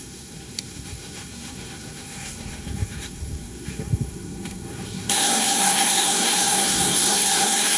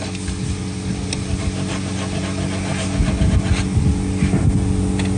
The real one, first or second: second